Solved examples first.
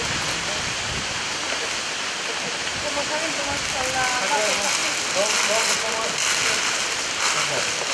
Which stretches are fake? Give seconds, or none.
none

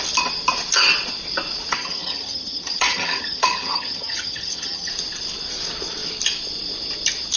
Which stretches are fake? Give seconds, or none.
1.7-4.9

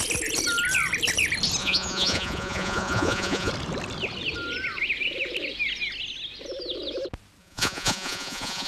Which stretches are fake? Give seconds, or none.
1.6-3.5; 7.4-8.7